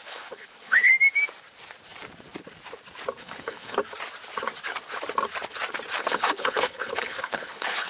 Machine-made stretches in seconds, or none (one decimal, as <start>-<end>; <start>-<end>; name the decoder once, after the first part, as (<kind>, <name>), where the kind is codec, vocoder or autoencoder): 0.0-0.9 (codec, HILCodec); 3.2-3.8; 6.0-7.9